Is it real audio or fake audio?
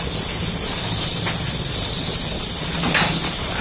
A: real